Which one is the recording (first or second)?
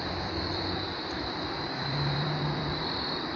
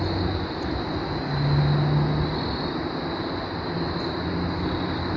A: second